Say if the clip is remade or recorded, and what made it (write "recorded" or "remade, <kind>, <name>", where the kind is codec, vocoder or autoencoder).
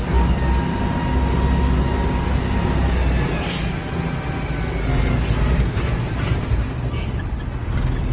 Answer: recorded